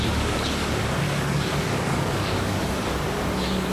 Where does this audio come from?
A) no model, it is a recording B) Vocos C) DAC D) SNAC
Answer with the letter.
C